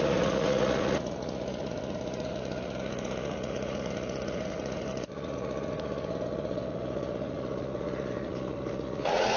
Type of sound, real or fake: fake